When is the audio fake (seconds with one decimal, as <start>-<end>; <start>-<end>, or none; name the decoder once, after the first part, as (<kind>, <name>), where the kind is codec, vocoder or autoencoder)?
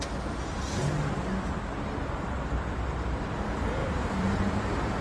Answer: none